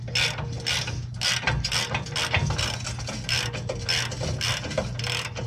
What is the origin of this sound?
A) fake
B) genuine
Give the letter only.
B